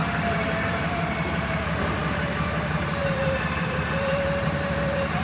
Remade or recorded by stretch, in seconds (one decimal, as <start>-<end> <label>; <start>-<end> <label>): 0.0-0.7 recorded; 0.7-5.2 remade